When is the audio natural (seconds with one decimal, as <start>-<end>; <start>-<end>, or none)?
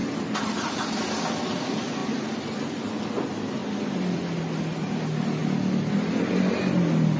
0.9-2.0; 3.0-3.6; 4.2-7.2